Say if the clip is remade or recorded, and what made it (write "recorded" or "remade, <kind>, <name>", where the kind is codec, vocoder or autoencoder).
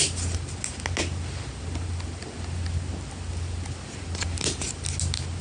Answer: recorded